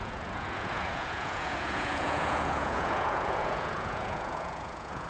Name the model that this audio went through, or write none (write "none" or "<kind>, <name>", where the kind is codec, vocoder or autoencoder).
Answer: vocoder, Vocos